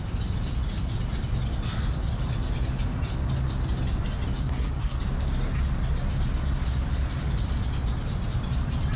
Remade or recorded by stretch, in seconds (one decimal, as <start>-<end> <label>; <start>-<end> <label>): 0.0-4.4 recorded; 4.4-5.0 remade; 5.0-9.0 recorded